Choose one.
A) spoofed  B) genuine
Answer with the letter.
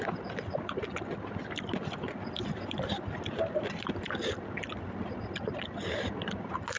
B